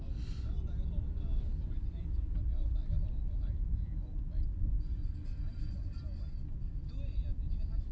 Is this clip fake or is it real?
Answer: real